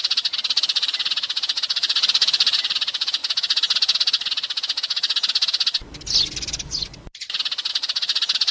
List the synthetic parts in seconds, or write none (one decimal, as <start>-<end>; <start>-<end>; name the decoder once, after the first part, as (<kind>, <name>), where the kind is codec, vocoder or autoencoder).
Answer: 0.0-3.2 (vocoder, BigVGAN v2); 7.7-8.5